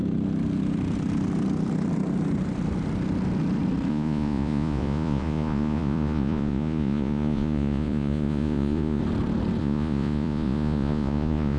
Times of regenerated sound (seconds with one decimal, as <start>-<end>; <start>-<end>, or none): 3.9-9.0; 9.6-11.6